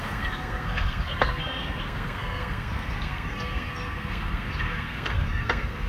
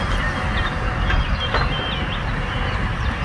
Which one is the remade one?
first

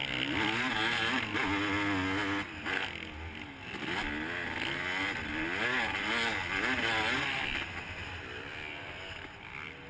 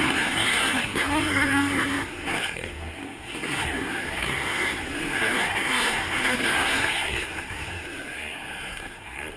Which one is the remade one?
second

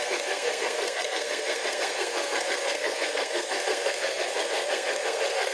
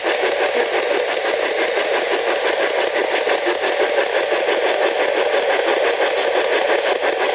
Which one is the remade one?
first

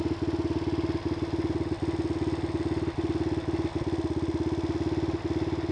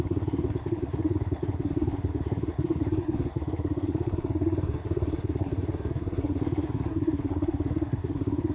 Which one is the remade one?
second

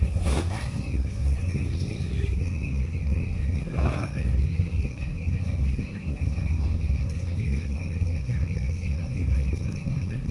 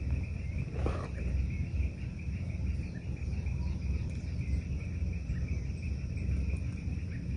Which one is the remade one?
first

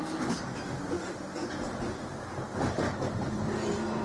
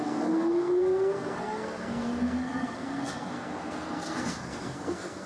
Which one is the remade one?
second